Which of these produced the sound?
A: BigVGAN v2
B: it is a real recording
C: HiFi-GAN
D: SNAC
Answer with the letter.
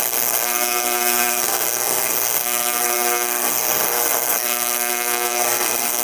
D